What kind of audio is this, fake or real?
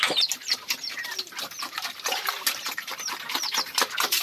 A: fake